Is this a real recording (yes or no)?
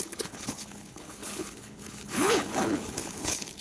no